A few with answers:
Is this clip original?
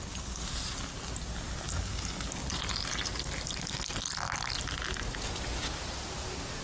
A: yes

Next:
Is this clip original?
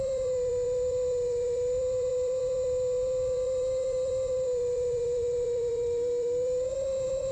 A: no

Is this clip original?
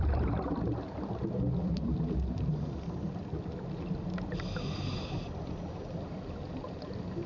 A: yes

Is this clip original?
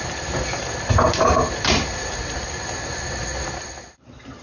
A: yes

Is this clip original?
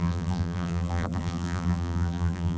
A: no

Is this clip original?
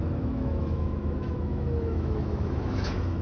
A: no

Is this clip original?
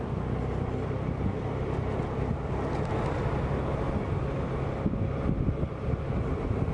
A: yes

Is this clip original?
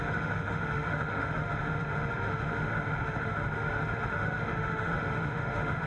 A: no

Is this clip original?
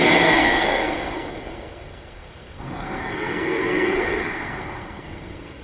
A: no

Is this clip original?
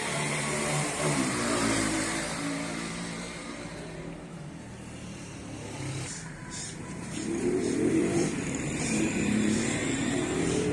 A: no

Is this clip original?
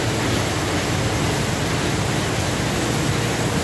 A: yes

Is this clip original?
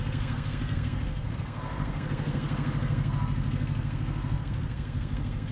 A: no